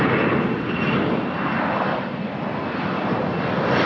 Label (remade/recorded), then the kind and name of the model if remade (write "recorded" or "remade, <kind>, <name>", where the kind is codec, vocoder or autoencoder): recorded